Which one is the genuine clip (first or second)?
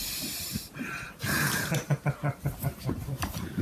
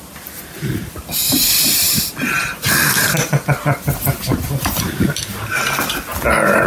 second